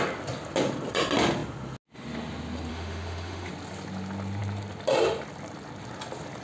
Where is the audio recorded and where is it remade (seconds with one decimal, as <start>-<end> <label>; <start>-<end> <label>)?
0.0-2.7 recorded; 2.7-3.5 remade; 3.5-6.4 recorded